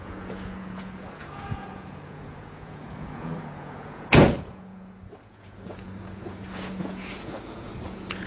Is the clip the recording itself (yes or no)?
no